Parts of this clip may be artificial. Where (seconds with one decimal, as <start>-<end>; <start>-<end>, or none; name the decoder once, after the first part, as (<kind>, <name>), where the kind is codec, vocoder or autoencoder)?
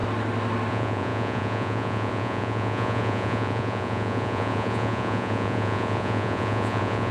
0.7-7.1 (vocoder, Vocos)